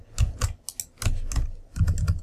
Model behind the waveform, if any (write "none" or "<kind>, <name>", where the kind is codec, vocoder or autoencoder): none